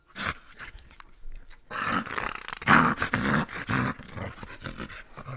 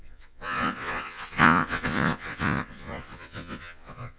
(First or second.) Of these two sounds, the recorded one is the first